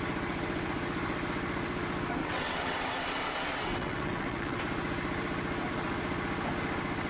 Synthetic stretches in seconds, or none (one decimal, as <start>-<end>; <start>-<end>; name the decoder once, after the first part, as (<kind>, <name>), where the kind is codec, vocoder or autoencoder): 2.2-2.9 (vocoder, WaveNeXt); 3.5-4.6